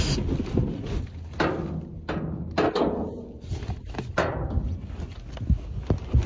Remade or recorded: recorded